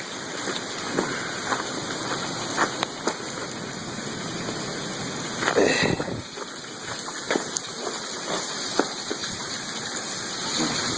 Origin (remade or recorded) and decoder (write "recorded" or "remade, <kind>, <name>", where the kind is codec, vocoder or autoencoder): recorded